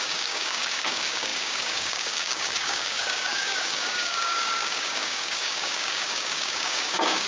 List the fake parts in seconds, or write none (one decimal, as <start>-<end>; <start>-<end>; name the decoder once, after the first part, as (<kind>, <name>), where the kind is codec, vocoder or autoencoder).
0.0-7.3 (codec, DAC)